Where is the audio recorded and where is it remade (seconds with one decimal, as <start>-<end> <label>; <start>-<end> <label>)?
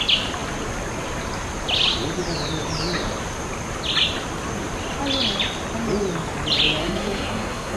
0.0-6.8 recorded; 6.8-7.8 remade